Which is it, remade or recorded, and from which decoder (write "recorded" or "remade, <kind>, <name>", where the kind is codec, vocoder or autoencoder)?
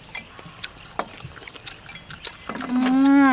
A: recorded